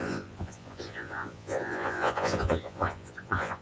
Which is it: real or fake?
fake